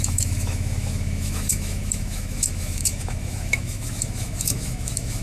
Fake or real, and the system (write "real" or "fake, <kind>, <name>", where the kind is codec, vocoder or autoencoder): fake, autoencoder, DAC-VAE